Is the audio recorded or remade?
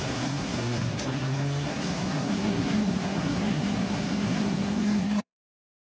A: remade